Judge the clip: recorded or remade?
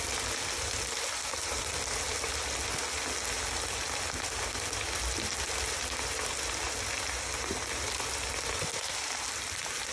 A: recorded